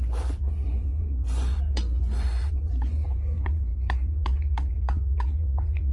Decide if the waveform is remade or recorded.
remade